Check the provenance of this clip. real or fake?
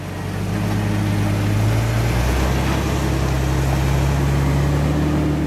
real